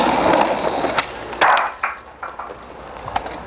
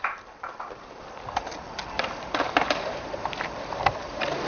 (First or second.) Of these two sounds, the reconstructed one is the second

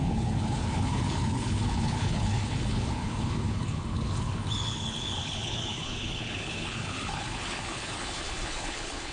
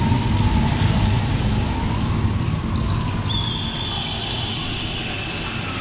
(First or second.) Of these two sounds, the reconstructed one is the first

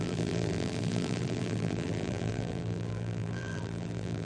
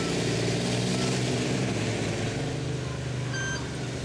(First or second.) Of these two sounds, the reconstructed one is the first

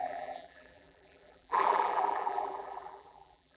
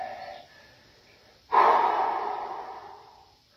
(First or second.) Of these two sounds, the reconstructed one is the first